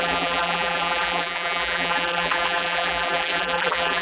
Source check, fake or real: fake